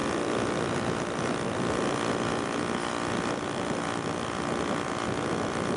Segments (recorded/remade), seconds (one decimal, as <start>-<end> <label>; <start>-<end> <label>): 0.0-5.8 recorded

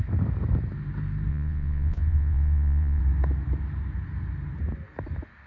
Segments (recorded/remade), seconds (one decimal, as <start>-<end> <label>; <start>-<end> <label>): 0.0-1.3 recorded; 1.3-3.0 remade; 3.0-5.5 recorded

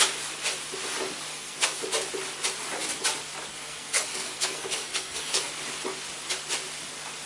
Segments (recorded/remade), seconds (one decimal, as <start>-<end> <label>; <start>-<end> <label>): 0.0-1.3 recorded; 1.3-1.8 remade; 1.8-3.5 recorded; 3.5-5.5 remade; 5.5-7.3 recorded

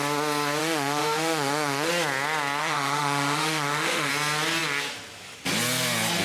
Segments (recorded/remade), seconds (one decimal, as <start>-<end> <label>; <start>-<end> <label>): 0.0-0.6 recorded; 0.6-1.9 remade; 1.9-2.6 recorded; 2.6-4.1 remade; 4.1-6.2 recorded

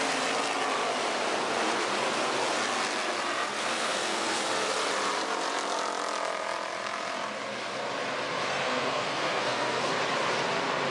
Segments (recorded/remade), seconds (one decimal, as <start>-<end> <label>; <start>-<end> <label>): 0.0-3.6 recorded; 3.6-4.4 remade; 4.4-8.5 recorded; 8.5-9.8 remade; 9.8-10.9 recorded

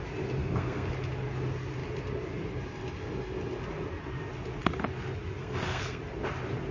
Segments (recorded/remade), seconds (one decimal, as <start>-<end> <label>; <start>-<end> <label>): 0.0-0.4 recorded; 0.4-0.9 remade; 0.9-5.4 recorded; 5.4-6.0 remade; 6.0-6.7 recorded

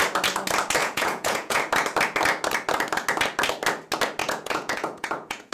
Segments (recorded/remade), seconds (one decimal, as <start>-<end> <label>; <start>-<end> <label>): 0.0-0.8 recorded; 0.8-1.6 remade; 1.6-4.2 recorded; 4.2-5.5 remade

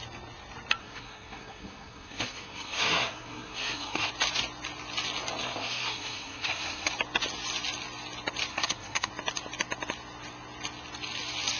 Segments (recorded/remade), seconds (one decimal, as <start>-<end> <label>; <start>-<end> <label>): 0.0-0.8 recorded; 0.8-4.1 remade; 4.1-5.4 recorded; 5.4-6.9 remade; 6.9-8.5 recorded; 8.5-9.1 remade; 9.1-11.6 recorded